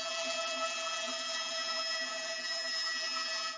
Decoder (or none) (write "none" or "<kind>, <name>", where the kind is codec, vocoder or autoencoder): vocoder, BigVGAN v2